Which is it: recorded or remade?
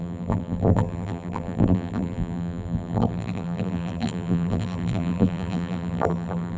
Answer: remade